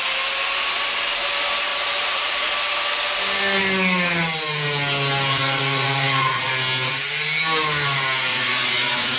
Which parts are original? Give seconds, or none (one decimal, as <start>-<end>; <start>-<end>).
0.0-1.7; 2.5-5.3; 6.5-8.3